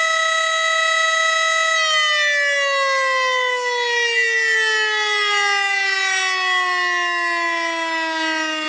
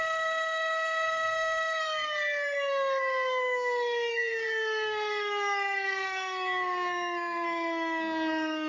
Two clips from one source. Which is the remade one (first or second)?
second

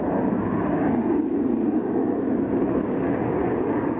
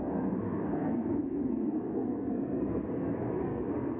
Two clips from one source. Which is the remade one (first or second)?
second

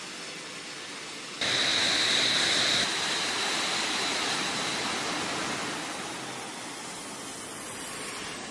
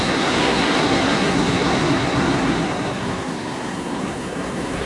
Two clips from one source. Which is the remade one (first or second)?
second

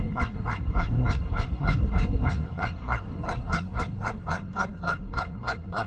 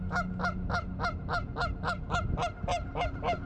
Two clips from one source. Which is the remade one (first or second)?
first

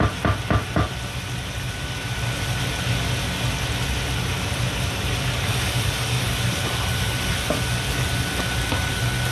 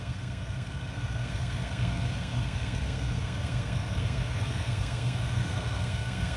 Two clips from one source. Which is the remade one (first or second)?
second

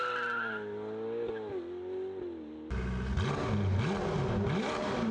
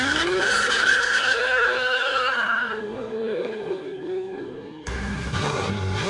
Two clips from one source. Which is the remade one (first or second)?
second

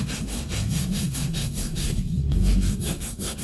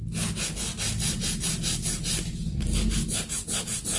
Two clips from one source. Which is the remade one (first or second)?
first